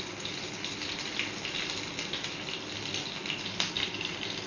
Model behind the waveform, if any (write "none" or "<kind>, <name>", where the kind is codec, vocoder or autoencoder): none